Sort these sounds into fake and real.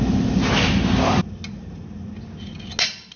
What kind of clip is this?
real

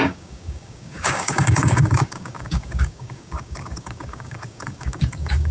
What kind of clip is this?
fake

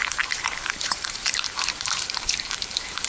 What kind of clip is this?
fake